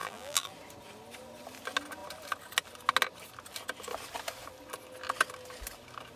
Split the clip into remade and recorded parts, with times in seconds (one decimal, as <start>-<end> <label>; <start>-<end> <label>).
0.0-0.5 remade; 0.5-6.2 recorded